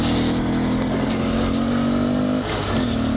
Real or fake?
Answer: real